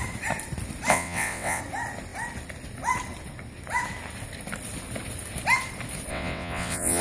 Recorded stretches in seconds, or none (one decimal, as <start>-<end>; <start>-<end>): 0.0-0.9; 1.6-6.1